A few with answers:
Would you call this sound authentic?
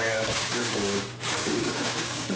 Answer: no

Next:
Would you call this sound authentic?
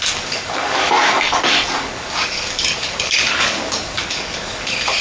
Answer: no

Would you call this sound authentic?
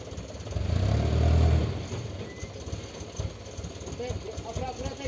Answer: yes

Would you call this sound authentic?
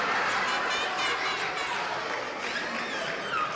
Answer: yes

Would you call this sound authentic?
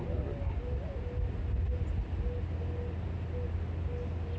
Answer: yes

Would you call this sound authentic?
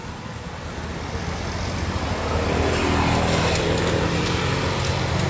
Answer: yes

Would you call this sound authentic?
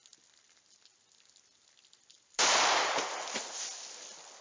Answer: yes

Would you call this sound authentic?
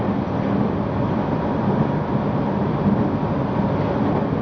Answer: yes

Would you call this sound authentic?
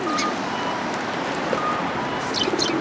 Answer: yes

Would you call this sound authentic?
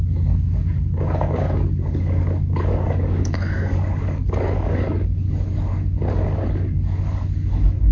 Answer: no